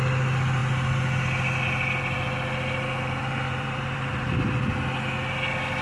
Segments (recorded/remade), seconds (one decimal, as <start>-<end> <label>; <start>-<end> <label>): 0.0-3.2 recorded; 3.2-4.3 remade; 4.3-5.8 recorded